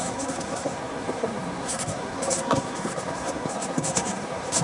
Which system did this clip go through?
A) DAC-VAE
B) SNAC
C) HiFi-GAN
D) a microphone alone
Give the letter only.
B